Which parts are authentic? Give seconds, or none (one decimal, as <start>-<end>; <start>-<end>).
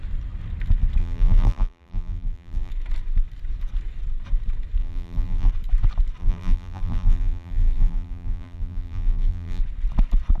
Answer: 0.0-1.0; 2.7-4.8; 5.5-6.2; 9.6-10.4